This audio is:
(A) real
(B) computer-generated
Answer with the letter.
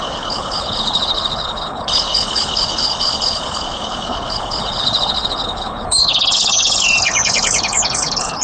B